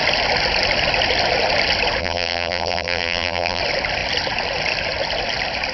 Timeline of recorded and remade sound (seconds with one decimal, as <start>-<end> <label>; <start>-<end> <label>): 0.0-2.0 recorded; 2.0-3.6 remade; 3.6-5.7 recorded